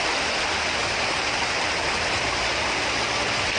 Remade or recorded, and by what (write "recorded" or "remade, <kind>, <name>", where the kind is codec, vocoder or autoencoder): recorded